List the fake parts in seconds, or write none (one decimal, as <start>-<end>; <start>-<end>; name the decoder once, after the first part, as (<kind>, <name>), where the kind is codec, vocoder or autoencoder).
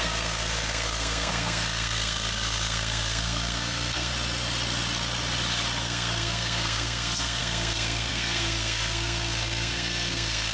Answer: 0.0-4.1 (codec, SNAC); 5.8-10.5